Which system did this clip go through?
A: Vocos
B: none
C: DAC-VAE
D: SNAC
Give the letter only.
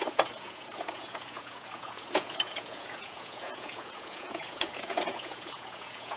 A